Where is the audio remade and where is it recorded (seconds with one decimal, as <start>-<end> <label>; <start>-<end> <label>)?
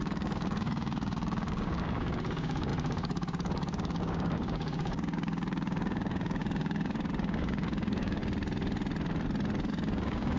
0.0-8.2 remade; 8.2-9.7 recorded; 9.7-10.4 remade